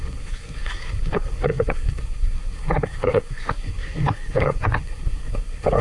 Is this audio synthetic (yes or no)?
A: yes